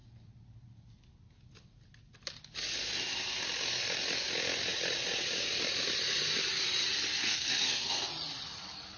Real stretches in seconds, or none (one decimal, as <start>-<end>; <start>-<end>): 0.0-7.2; 8.1-9.0